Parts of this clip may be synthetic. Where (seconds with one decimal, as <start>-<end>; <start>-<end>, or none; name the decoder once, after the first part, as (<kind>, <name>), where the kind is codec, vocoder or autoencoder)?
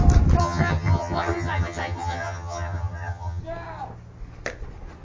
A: 0.4-3.4 (vocoder, HiFi-GAN)